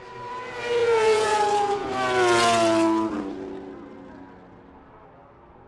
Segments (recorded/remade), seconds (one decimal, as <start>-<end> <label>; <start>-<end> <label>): 0.0-0.8 recorded; 0.8-1.9 remade; 1.9-5.7 recorded